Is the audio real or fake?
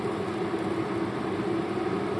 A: real